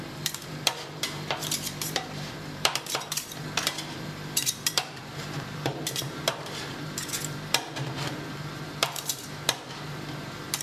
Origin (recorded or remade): remade